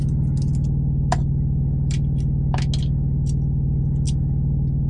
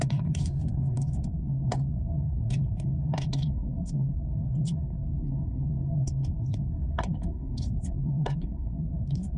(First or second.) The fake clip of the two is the second